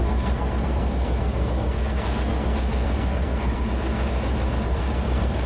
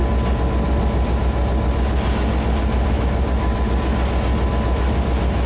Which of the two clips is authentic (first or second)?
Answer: second